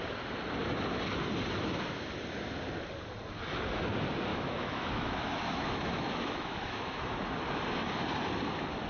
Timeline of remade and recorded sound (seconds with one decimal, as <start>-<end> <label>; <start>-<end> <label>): 0.0-4.3 recorded; 4.3-7.2 remade; 7.2-8.9 recorded